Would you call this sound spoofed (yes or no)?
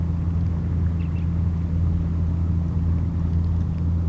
no